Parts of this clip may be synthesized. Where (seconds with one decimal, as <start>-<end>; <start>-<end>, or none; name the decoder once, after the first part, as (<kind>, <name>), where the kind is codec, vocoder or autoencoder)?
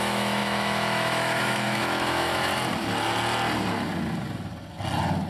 0.0-2.5 (autoencoder, DAC-VAE)